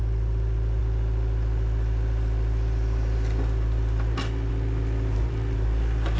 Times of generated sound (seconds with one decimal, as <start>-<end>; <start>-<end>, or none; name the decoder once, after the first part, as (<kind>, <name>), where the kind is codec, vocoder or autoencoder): 0.0-0.8 (vocoder, BigVGAN v2); 4.5-6.2